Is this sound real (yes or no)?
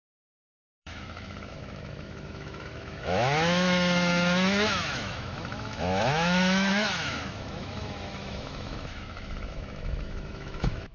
no